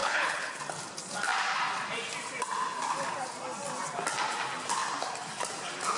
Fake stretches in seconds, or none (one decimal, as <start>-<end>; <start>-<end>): 0.0-0.6